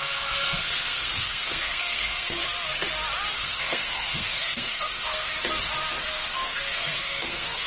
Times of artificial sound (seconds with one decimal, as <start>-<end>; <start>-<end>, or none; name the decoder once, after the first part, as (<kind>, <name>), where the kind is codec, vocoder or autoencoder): 0.0-2.4 (codec, SNAC); 3.3-5.3; 6.0-7.7